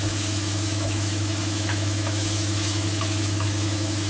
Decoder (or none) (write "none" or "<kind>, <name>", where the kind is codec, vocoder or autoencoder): autoencoder, DAC-VAE